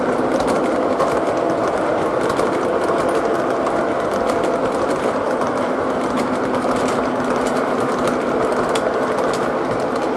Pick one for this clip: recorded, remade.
recorded